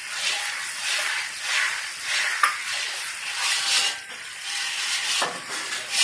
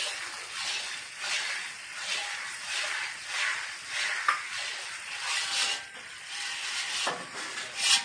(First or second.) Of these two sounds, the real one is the second